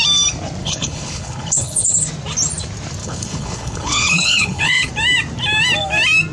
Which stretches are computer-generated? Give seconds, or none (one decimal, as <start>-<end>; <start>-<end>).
0.6-2.1; 3.0-4.9